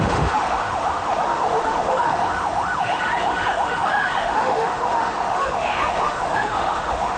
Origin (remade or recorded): remade